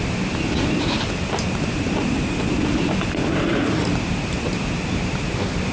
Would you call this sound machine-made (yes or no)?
no